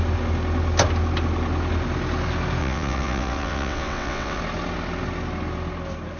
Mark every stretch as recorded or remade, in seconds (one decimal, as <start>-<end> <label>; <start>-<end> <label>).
0.0-2.6 recorded; 2.6-4.4 remade; 4.4-6.2 recorded